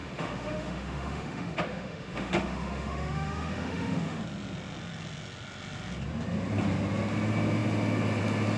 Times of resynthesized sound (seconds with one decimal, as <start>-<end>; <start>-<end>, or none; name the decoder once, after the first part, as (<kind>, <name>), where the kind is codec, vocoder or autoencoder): 0.0-4.2 (autoencoder, DAC-VAE)